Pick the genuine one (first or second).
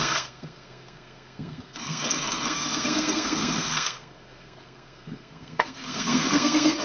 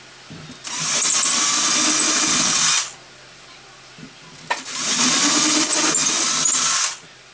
second